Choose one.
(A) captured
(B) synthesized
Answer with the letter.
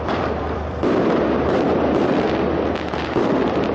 B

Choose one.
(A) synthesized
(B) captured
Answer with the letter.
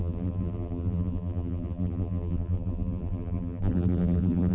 A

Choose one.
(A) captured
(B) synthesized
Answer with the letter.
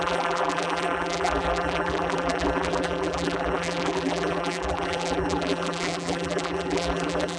B